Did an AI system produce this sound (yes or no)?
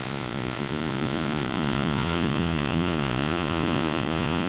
yes